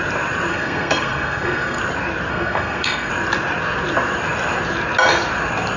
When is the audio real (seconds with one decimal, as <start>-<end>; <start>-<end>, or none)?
0.0-0.5; 1.8-2.3; 3.1-5.8